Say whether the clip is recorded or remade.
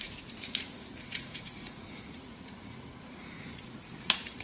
remade